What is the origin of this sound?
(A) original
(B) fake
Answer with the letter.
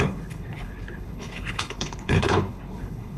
B